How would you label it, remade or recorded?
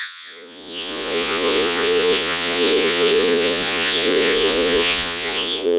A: remade